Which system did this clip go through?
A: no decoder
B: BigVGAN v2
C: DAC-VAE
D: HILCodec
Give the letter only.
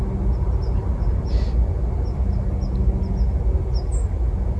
A